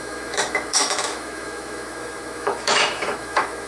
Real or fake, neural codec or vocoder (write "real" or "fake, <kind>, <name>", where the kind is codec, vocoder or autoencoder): fake, autoencoder, DAC-VAE